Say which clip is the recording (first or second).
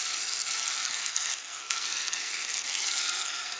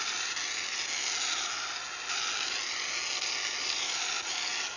second